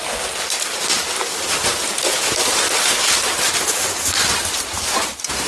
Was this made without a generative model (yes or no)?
yes